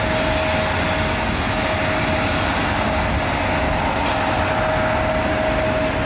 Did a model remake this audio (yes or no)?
no